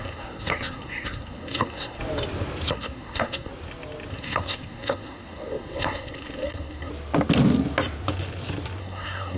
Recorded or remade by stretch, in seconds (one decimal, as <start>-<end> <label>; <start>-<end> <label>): 0.0-2.0 remade; 2.0-2.7 recorded; 2.7-3.5 remade; 3.5-4.1 recorded; 4.1-6.9 remade; 6.9-8.8 recorded; 8.8-9.4 remade